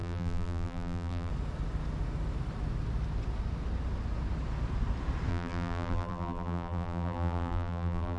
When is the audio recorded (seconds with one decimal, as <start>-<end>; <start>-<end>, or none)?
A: 1.3-5.3